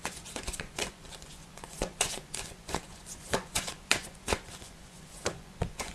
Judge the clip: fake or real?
fake